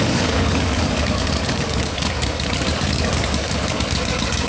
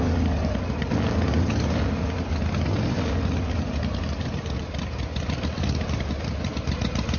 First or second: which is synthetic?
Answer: first